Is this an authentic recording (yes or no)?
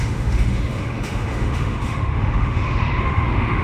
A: no